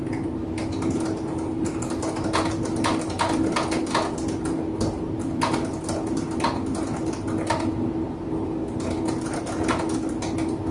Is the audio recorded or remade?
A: recorded